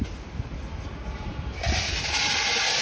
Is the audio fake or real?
real